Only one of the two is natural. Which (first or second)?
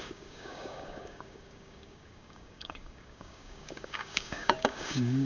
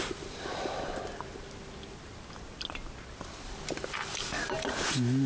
second